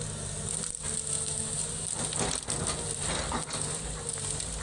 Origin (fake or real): real